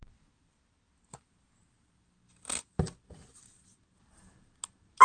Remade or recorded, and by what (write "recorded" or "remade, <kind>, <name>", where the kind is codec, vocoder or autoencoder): recorded